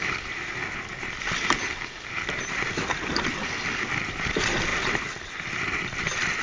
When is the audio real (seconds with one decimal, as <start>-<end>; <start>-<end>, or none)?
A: 0.0-6.4